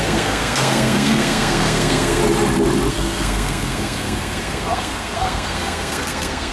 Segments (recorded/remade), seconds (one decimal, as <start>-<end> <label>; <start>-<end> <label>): 0.0-2.2 remade; 2.2-2.9 recorded; 2.9-6.5 remade

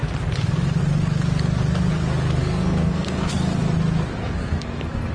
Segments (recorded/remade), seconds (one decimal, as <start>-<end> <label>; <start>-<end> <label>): 0.0-2.4 recorded; 2.4-3.3 remade; 3.3-4.2 recorded; 4.2-5.1 remade

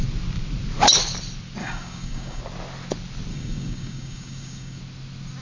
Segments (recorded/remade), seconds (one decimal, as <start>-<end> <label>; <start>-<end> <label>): 0.0-1.6 recorded; 1.6-2.4 remade; 2.4-3.3 recorded; 3.3-4.8 remade; 4.8-5.4 recorded

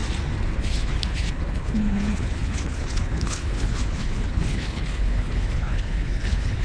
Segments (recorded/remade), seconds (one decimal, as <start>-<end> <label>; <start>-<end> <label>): 0.0-0.6 recorded; 0.6-6.6 remade

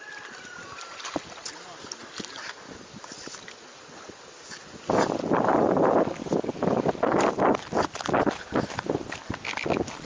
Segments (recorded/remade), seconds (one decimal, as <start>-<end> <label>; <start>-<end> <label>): 0.0-10.0 recorded

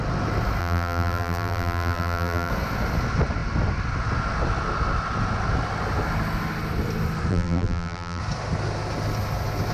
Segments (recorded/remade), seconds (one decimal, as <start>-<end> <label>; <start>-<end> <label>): 0.0-0.6 recorded; 0.6-2.5 remade; 2.5-7.3 recorded; 7.3-8.2 remade; 8.2-9.7 recorded

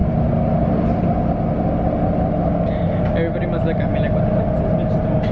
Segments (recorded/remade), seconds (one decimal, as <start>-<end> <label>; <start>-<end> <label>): 0.0-5.3 recorded

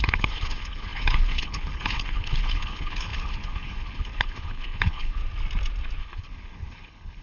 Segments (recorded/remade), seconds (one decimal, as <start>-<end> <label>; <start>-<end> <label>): 0.0-5.2 remade; 5.2-6.0 recorded; 6.0-7.2 remade